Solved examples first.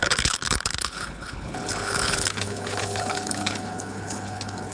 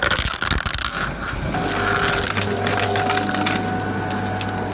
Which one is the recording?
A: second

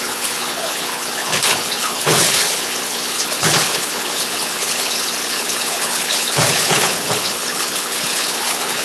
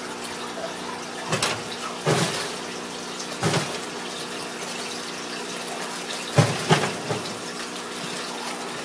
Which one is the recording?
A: second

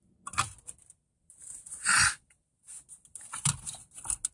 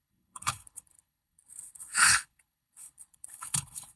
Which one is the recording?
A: first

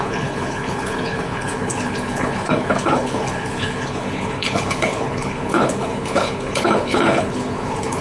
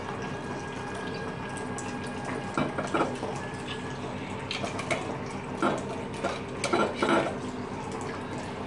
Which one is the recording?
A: second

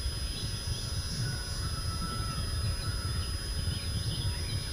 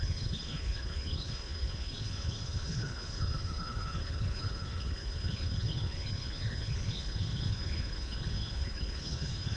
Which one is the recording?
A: first